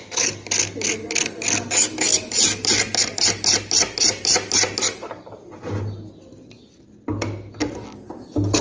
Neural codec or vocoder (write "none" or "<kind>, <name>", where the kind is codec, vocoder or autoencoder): none